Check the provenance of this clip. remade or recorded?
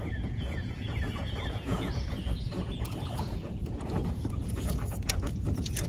remade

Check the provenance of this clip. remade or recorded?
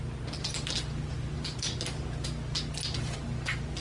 recorded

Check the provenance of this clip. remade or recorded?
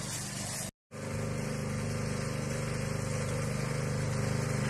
recorded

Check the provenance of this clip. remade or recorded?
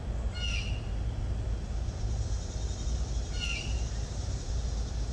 recorded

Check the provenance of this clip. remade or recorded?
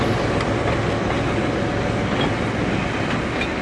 recorded